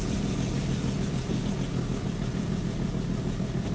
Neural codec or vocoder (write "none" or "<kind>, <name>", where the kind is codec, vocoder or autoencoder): none